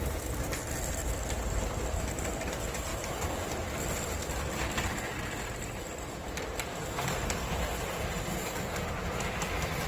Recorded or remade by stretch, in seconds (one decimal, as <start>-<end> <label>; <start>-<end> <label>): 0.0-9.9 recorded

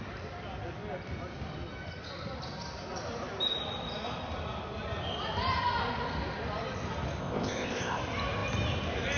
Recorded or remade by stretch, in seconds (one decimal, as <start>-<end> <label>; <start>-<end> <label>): 0.0-7.2 recorded; 7.2-8.0 remade; 8.0-9.2 recorded

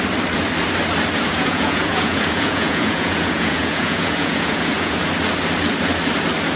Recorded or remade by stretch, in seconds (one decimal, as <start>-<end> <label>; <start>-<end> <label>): 0.0-1.3 recorded; 1.3-5.1 remade; 5.1-6.6 recorded

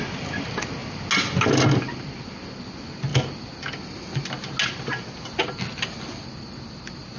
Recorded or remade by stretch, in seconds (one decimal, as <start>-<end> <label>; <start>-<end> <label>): 0.0-7.2 recorded

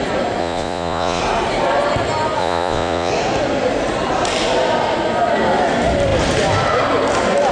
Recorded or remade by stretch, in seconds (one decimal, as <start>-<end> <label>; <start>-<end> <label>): 0.0-0.4 recorded; 0.4-1.2 remade; 1.2-2.4 recorded; 2.4-3.1 remade; 3.1-7.5 recorded